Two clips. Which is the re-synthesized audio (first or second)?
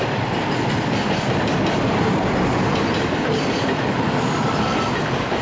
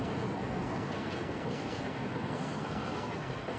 second